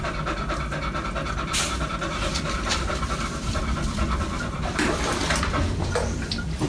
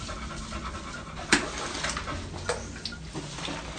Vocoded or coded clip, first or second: first